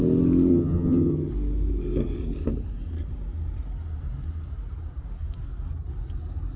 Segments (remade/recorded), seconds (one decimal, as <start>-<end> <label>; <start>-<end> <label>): 0.0-0.5 recorded; 0.5-1.3 remade; 1.3-6.6 recorded